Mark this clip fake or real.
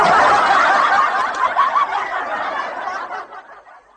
real